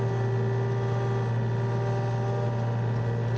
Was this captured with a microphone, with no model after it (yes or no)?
yes